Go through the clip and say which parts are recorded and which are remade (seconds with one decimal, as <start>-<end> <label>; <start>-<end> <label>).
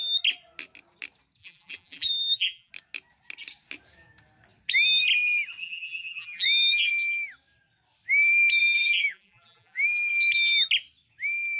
0.0-1.4 recorded; 1.4-2.7 remade; 2.7-5.6 recorded; 5.6-6.9 remade; 6.9-8.6 recorded; 8.6-10.1 remade; 10.1-11.6 recorded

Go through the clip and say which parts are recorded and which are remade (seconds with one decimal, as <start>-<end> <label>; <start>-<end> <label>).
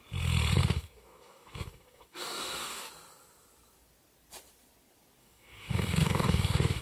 0.0-0.6 recorded; 0.6-2.9 remade; 2.9-5.2 recorded; 5.2-6.8 remade